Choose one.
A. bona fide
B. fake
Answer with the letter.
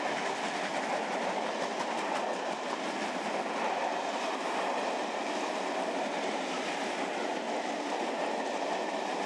A